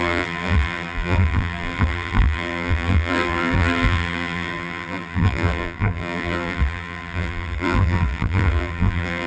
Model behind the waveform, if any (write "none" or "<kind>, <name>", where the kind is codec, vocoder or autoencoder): vocoder, BigVGAN v2